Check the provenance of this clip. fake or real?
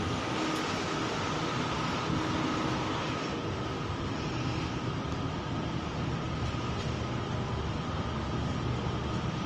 real